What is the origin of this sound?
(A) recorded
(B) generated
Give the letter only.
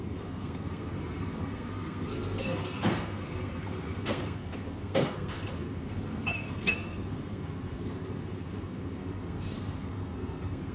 B